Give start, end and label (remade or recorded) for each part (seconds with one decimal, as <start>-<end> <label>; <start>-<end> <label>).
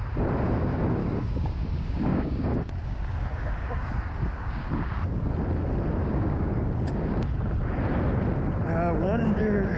0.0-1.0 recorded; 1.0-5.3 remade; 5.3-6.0 recorded; 6.0-7.3 remade; 7.3-9.0 recorded; 9.0-9.8 remade